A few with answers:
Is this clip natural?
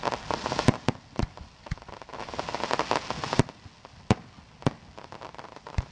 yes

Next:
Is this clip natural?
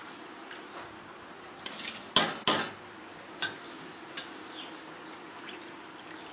yes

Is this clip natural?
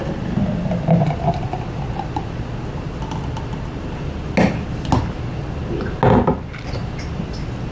yes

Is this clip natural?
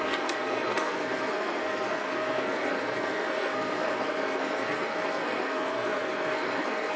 no